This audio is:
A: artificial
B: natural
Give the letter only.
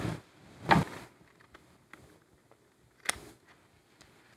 B